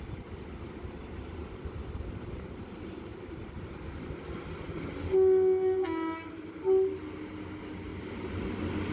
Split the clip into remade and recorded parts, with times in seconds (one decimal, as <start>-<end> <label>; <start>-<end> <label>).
0.0-3.1 recorded; 3.1-4.2 remade; 4.2-7.9 recorded; 7.9-8.4 remade; 8.4-8.9 recorded